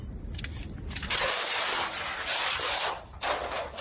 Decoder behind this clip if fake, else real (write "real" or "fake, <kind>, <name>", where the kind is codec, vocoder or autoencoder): real